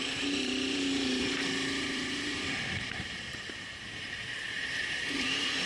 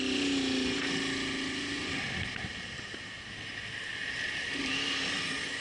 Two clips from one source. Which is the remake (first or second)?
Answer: first